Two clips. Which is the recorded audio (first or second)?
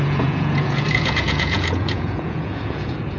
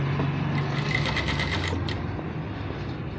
second